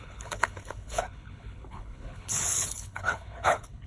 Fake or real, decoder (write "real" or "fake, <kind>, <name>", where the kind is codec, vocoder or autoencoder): fake, codec, HILCodec